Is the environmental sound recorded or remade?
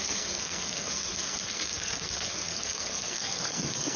remade